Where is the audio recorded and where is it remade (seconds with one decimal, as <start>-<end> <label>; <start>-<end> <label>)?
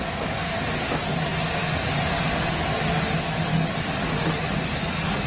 0.0-5.3 recorded